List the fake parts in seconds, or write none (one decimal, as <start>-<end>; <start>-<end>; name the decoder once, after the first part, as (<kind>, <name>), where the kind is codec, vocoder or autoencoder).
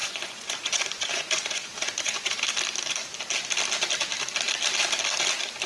0.0-2.4 (vocoder, Vocos)